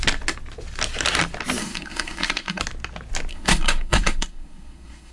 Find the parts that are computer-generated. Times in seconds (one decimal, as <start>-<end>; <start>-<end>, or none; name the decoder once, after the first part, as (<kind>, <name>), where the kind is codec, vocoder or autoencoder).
1.6-2.6 (codec, SNAC); 3.3-5.1